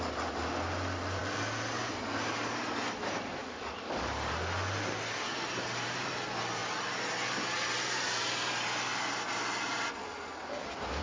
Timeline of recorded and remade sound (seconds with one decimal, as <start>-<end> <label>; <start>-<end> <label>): 0.0-3.4 recorded; 3.4-4.3 remade; 4.3-11.0 recorded